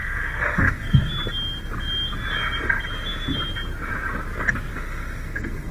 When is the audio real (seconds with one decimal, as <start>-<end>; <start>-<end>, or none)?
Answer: 1.1-4.7